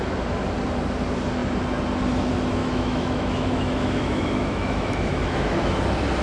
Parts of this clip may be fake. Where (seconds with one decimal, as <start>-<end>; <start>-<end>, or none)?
2.6-5.8